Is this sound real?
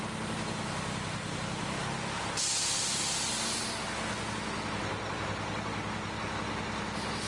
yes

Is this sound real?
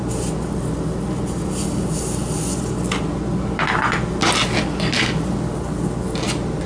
yes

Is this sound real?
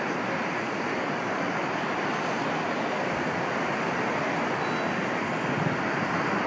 yes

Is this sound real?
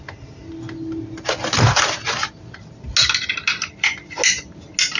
yes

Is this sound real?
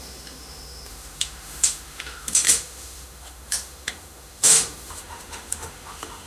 no